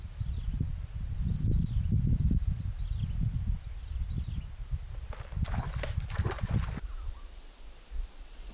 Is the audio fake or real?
real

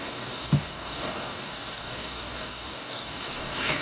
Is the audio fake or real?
fake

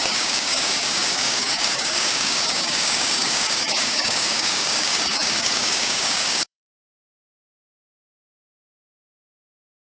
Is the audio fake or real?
fake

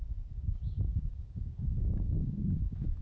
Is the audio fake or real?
fake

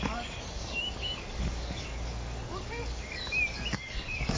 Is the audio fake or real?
fake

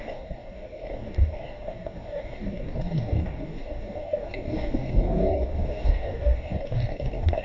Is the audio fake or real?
fake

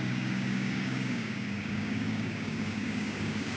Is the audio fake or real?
fake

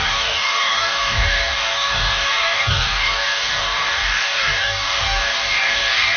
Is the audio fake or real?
fake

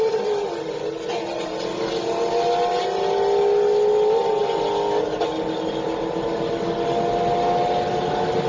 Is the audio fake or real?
real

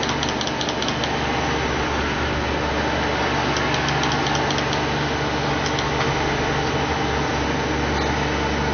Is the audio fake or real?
real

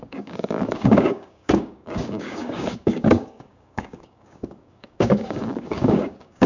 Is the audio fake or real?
fake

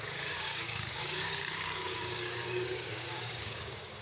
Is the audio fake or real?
fake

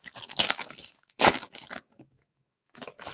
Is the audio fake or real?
fake